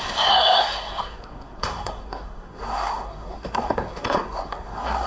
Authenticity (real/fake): fake